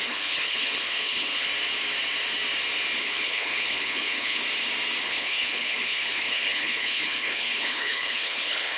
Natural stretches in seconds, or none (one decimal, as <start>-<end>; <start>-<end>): 1.5-3.0; 4.4-5.0